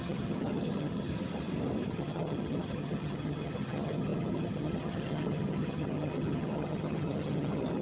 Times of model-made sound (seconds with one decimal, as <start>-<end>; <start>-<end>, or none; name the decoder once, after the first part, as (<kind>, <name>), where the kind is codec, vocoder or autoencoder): 0.0-1.1 (vocoder, HiFi-GAN); 1.9-7.8